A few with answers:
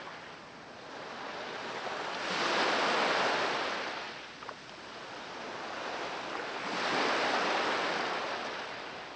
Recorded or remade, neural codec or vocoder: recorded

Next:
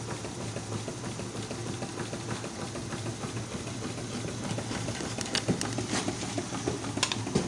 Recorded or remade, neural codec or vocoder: recorded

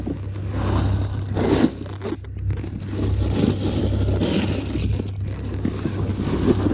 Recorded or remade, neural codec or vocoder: recorded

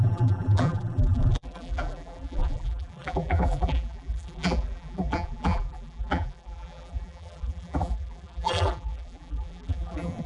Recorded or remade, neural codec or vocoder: remade, vocoder, BigVGAN v2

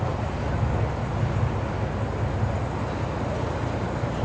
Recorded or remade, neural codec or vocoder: recorded